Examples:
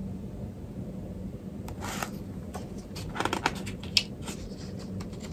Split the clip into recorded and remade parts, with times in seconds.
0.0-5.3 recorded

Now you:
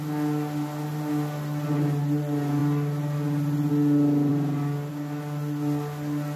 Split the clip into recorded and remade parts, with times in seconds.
0.0-6.4 recorded

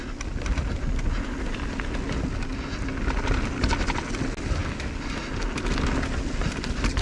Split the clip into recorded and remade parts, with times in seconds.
0.0-7.0 recorded

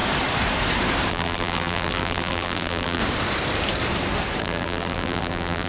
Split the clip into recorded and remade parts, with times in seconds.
0.0-1.1 recorded; 1.1-3.0 remade; 3.0-4.4 recorded; 4.4-5.7 remade

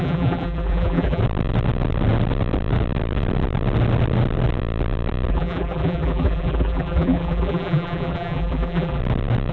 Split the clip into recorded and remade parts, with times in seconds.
0.0-1.2 remade; 1.2-5.3 recorded; 5.3-9.0 remade; 9.0-9.5 recorded

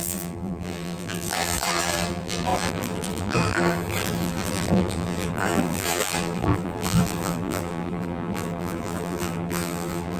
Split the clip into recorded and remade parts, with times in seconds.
0.0-10.2 remade